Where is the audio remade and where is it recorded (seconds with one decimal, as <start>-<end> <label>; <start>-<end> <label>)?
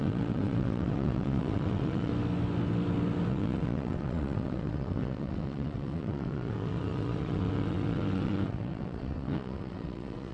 0.0-2.1 remade; 2.1-3.3 recorded; 3.3-10.3 remade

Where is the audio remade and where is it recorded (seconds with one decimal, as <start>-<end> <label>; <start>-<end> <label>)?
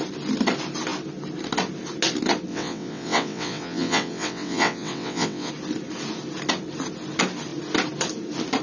0.0-2.5 recorded; 2.5-5.5 remade; 5.5-8.6 recorded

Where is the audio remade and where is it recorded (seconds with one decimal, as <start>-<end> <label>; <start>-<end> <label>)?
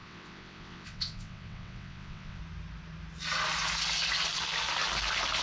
0.0-2.4 remade; 2.4-5.4 recorded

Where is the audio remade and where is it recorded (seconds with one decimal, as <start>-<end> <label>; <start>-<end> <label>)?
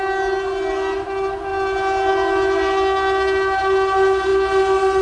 0.0-5.0 recorded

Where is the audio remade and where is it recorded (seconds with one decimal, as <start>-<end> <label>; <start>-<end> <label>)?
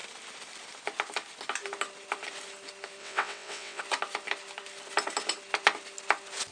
0.0-3.0 recorded; 3.0-3.8 remade; 3.8-6.5 recorded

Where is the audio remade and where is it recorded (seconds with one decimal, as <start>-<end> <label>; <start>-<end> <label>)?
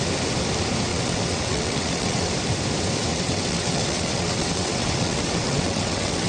0.0-0.9 recorded; 0.9-2.3 remade; 2.3-3.1 recorded; 3.1-6.3 remade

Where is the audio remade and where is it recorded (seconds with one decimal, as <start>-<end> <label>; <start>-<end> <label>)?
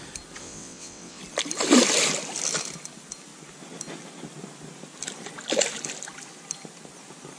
0.0-0.4 recorded; 0.4-1.2 remade; 1.2-7.4 recorded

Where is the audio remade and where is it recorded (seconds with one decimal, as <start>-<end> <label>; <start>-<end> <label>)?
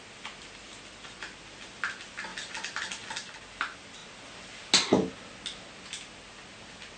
0.0-7.0 recorded